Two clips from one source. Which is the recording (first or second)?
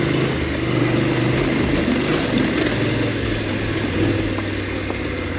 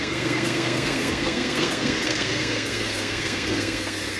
first